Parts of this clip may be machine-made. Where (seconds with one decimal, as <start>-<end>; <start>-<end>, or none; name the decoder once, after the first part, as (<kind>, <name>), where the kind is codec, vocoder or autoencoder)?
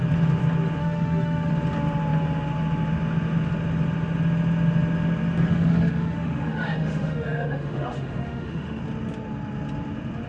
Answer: 0.8-1.5 (autoencoder, DAC-VAE); 5.5-8.8